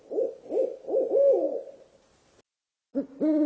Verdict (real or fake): real